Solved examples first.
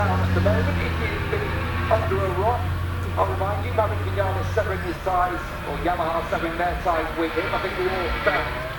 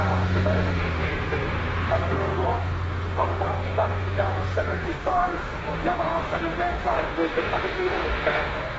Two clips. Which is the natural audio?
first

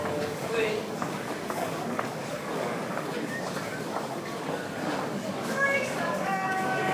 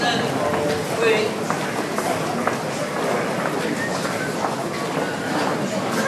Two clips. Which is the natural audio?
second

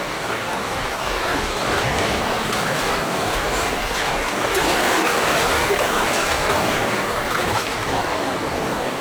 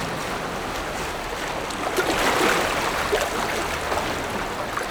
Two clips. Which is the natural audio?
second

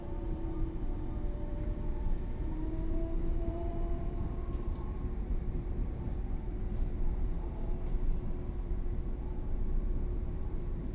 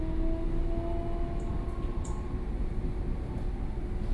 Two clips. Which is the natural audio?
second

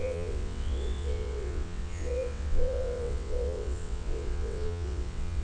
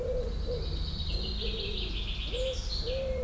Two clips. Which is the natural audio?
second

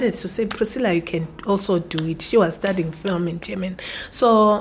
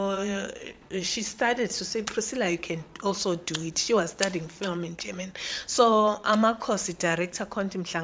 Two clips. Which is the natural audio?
first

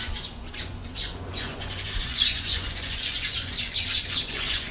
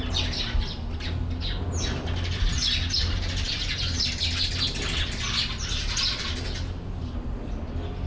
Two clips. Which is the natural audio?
second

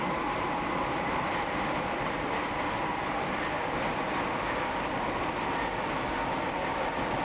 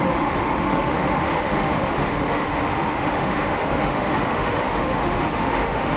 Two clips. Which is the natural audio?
first